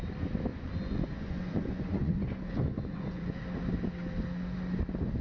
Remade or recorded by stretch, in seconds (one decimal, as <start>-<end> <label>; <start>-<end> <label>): 0.0-0.5 recorded; 0.5-3.4 remade; 3.4-5.2 recorded